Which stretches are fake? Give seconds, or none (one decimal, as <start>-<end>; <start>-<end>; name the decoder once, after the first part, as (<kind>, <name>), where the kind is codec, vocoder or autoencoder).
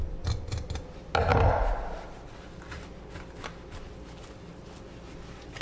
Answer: none